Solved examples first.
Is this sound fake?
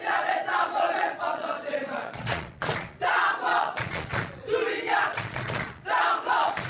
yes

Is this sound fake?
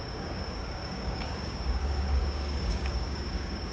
yes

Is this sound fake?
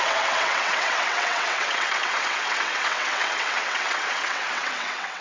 yes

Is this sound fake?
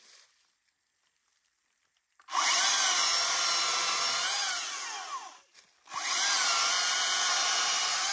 no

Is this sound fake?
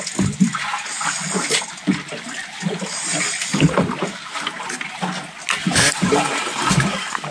no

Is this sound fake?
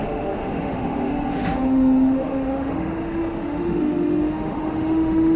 yes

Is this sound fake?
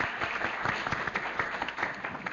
no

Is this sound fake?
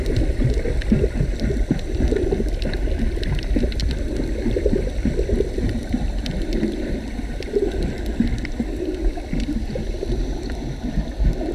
no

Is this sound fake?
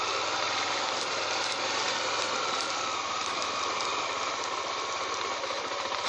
no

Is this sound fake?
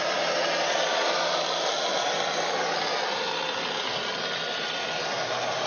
no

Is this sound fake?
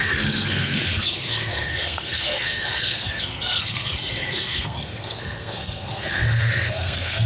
yes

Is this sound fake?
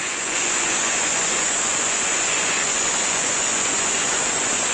yes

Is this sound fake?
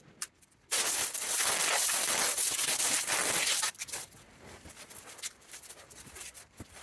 yes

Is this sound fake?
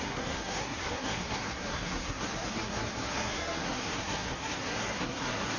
yes